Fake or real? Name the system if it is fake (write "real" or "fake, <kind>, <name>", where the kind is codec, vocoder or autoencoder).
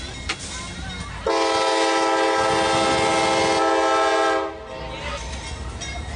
real